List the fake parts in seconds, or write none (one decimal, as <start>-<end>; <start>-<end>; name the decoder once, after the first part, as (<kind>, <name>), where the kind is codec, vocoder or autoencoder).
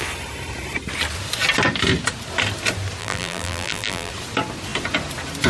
3.0-4.1 (vocoder, BigVGAN v2)